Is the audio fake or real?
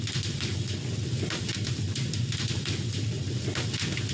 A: real